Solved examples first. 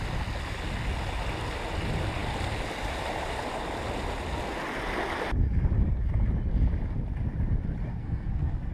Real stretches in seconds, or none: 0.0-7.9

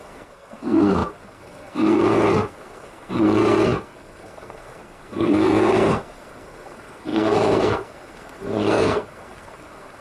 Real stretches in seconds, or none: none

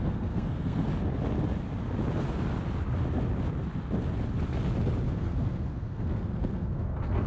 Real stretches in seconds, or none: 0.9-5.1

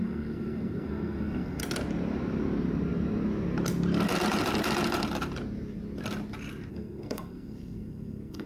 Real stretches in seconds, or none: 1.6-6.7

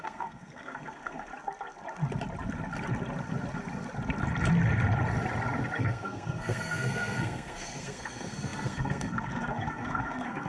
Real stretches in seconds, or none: 1.3-5.8

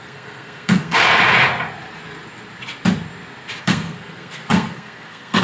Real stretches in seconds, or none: 1.0-3.6

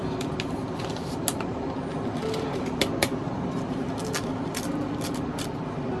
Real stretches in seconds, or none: 0.0-6.0

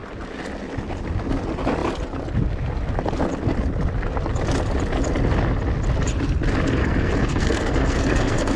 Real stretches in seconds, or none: 0.0-6.8